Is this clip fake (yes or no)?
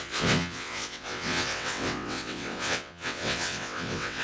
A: yes